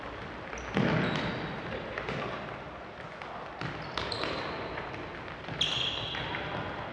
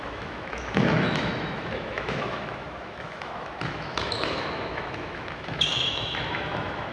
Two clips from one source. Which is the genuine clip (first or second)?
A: first